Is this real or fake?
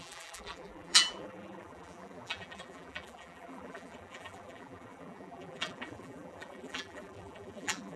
fake